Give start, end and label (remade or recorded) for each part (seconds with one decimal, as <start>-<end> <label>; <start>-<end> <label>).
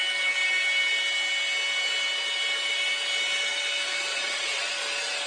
0.0-4.1 recorded; 4.1-4.7 remade; 4.7-5.3 recorded